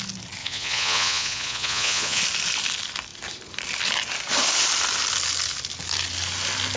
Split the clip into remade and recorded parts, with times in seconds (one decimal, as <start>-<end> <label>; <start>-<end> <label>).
0.0-0.4 recorded; 0.4-2.2 remade; 2.2-6.8 recorded